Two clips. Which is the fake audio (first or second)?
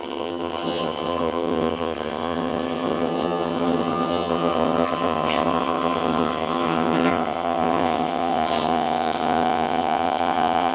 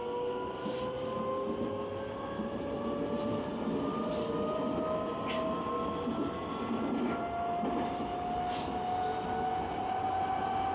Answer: first